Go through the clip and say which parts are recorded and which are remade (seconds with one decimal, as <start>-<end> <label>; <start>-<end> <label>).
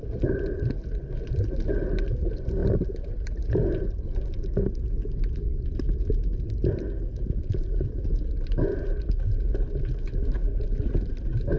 0.0-2.6 recorded; 2.6-3.5 remade; 3.5-11.6 recorded